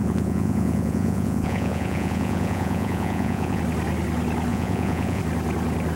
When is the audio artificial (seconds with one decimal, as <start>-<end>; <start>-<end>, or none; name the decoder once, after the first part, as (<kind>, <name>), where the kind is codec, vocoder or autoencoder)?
0.0-3.6 (vocoder, Vocos); 4.5-5.2